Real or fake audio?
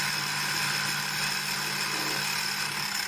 real